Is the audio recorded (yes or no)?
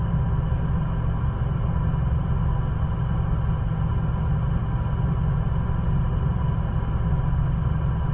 yes